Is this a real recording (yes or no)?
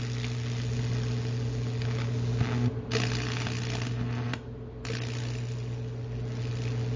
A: yes